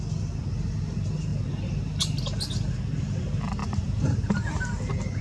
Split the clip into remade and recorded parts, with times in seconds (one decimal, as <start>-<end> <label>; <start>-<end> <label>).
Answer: 0.0-3.6 recorded; 3.6-4.7 remade; 4.7-5.2 recorded